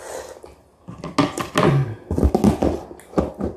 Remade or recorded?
recorded